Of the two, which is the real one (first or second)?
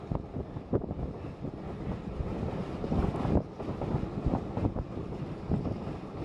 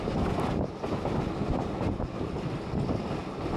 second